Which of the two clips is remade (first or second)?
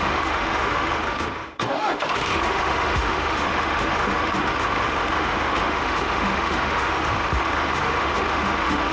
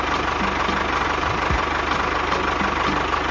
first